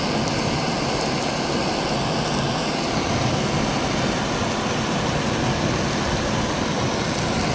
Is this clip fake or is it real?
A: real